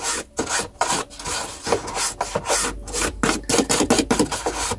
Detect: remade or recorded recorded